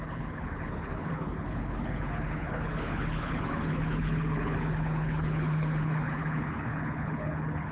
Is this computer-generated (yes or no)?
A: yes